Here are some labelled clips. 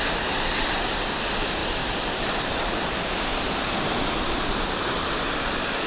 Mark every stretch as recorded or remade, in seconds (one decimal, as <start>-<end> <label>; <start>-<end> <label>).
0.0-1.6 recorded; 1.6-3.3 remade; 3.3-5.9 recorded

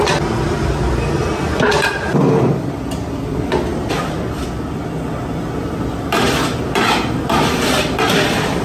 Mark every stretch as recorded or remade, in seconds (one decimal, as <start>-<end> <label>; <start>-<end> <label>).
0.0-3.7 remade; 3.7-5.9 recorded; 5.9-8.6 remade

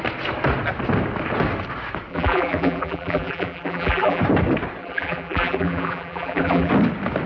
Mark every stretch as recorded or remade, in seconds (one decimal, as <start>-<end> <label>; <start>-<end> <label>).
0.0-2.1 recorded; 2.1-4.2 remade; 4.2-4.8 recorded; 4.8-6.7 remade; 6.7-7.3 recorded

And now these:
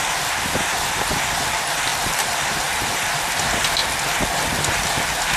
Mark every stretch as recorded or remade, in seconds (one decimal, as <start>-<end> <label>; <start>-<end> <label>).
0.0-1.9 recorded; 1.9-3.1 remade; 3.1-5.4 recorded

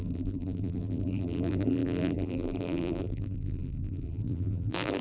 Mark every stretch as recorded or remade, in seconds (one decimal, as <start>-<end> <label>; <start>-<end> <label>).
0.0-5.0 remade

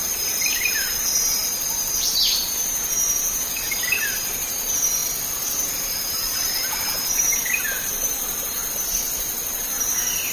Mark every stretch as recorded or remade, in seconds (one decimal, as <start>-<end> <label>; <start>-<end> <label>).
0.0-5.0 remade; 5.0-5.7 recorded; 5.7-8.6 remade; 8.6-9.6 recorded; 9.6-10.3 remade

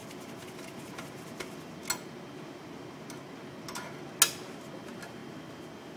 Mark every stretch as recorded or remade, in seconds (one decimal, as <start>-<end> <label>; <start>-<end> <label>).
0.0-6.0 recorded